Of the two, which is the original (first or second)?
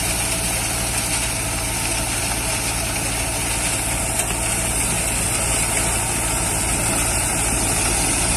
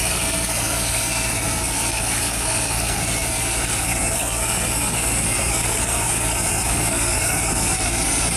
first